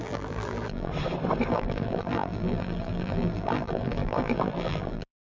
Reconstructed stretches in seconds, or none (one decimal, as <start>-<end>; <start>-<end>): 0.0-0.9; 1.5-5.3

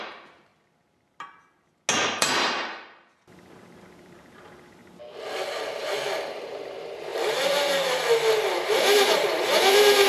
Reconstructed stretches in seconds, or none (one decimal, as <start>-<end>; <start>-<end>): 0.0-0.5; 2.2-4.8; 5.7-10.1

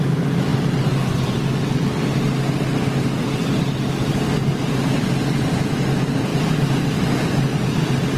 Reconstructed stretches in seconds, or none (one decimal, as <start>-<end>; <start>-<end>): 0.5-1.5; 6.3-7.1

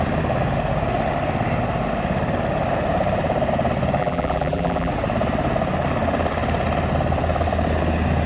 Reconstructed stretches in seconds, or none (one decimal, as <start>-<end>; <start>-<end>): 4.0-4.9

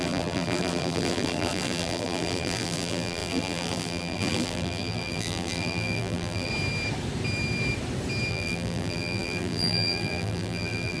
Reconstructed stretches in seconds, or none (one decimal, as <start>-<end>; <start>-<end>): 0.0-6.5; 8.3-11.0